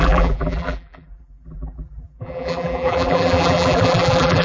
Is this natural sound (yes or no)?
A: no